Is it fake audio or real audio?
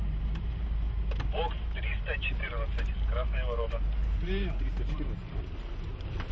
fake